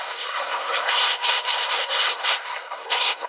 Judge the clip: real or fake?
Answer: fake